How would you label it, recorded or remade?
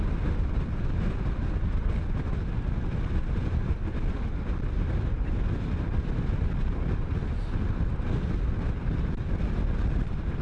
recorded